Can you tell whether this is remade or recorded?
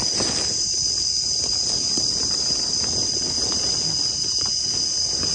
recorded